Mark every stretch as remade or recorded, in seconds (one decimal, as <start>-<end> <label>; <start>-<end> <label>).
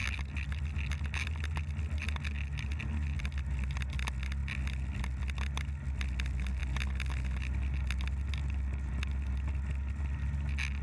0.0-10.8 recorded